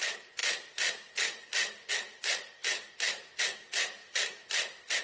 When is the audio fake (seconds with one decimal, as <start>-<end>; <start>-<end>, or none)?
0.4-1.9